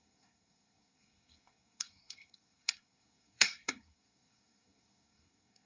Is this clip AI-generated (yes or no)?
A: yes